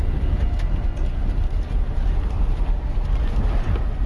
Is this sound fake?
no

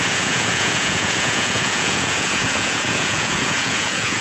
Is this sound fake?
yes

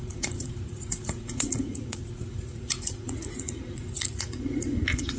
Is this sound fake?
yes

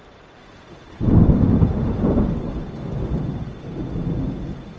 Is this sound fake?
no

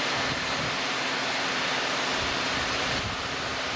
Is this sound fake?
no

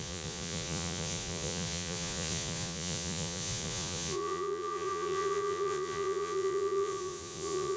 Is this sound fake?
yes